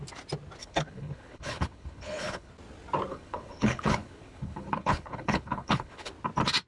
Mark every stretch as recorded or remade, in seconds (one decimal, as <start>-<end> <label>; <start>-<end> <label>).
0.0-0.6 recorded; 0.6-2.5 remade; 2.5-3.1 recorded; 3.1-6.1 remade; 6.1-6.7 recorded